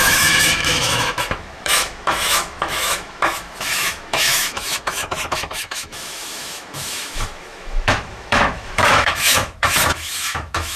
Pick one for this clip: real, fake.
fake